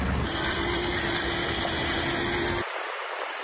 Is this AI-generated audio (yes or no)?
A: no